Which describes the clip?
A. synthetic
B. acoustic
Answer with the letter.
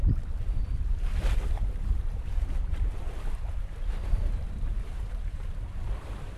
A